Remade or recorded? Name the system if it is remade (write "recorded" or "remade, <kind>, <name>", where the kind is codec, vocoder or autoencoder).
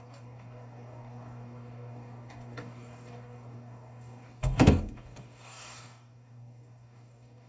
remade, codec, DAC